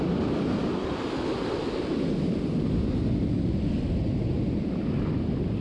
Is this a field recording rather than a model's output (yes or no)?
yes